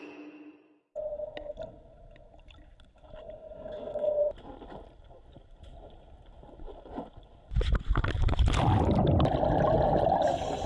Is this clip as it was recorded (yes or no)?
yes